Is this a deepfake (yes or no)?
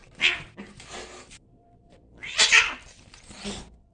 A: yes